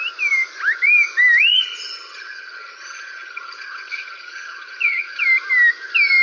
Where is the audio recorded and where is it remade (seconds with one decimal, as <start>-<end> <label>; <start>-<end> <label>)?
0.0-1.5 recorded; 1.5-5.2 remade; 5.2-6.2 recorded